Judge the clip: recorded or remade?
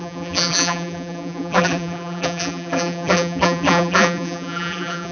remade